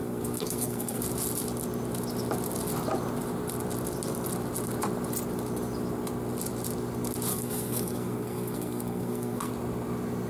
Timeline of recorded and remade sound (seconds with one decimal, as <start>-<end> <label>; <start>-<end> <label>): 0.0-1.0 remade; 1.0-7.3 recorded; 7.3-9.5 remade; 9.5-10.3 recorded